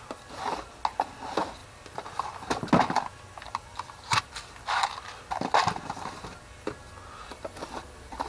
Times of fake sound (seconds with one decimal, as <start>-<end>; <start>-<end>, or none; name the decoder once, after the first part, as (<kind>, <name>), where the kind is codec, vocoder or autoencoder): 7.3-8.3 (vocoder, BigVGAN v2)